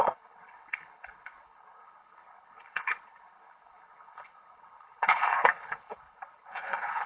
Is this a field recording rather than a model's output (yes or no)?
no